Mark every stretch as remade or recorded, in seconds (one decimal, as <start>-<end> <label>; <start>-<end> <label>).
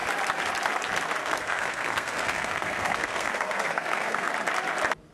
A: 0.0-1.2 recorded; 1.2-4.3 remade; 4.3-5.1 recorded